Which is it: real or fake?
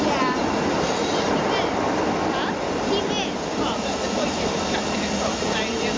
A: real